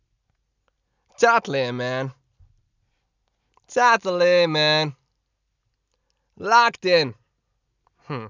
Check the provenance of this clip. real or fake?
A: real